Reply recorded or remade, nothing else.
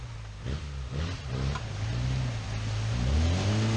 recorded